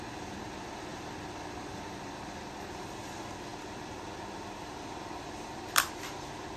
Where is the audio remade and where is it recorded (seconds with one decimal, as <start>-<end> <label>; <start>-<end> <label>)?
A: 0.0-6.6 recorded